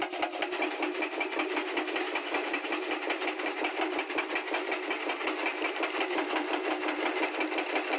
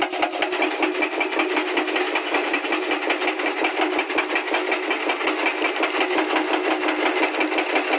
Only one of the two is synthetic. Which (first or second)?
first